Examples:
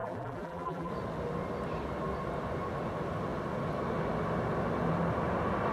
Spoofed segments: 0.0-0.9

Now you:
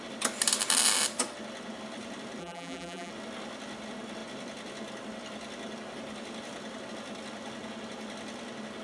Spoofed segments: 2.4-3.1

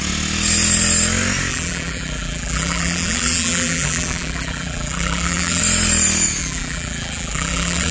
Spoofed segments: 1.5-5.6; 6.4-7.9